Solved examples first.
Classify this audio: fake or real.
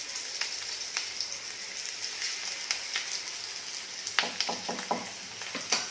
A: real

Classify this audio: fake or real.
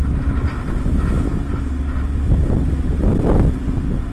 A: real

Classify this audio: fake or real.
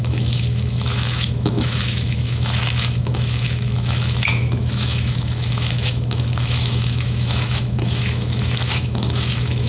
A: fake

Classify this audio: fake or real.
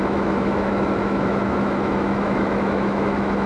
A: fake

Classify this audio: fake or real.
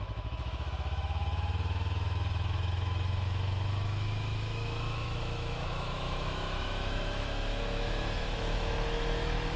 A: fake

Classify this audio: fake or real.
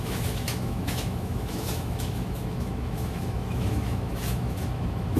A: fake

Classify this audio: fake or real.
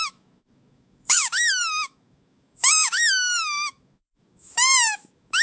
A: fake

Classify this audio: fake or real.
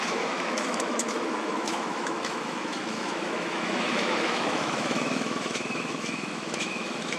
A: fake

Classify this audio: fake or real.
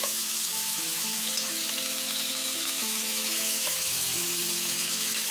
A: fake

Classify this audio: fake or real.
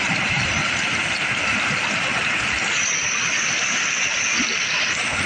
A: real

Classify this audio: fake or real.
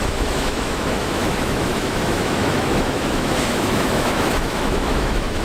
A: fake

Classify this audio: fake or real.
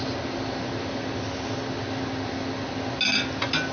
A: real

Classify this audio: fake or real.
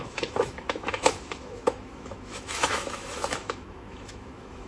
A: fake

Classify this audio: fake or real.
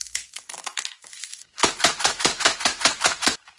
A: fake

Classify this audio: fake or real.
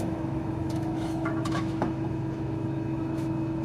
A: fake